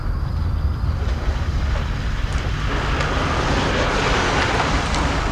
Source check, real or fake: real